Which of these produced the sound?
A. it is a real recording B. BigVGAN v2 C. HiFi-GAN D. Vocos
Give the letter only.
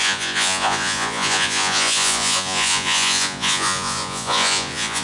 D